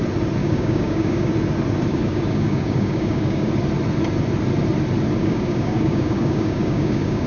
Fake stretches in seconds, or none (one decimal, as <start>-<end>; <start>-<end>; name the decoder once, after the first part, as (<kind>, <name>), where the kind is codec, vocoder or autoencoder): 0.4-1.3 (codec, DAC); 1.9-3.5; 5.2-7.3